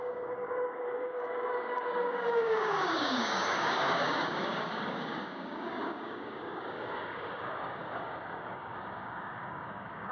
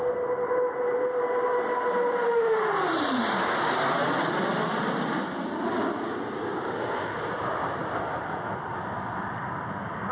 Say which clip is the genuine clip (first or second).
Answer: second